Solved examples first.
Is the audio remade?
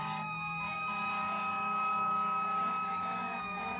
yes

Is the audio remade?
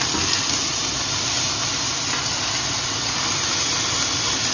no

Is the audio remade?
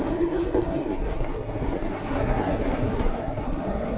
yes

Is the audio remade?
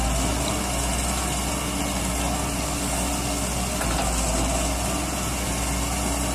no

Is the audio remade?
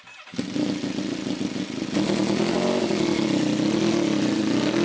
no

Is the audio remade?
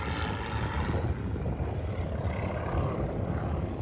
no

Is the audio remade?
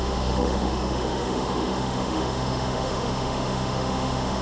yes